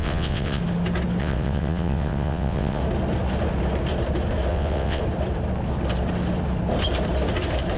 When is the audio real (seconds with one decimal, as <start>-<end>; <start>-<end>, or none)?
0.6-1.2; 2.8-4.5; 5.0-7.8